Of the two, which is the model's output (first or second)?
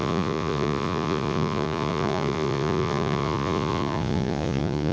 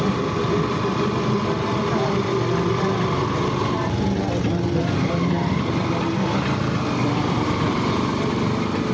first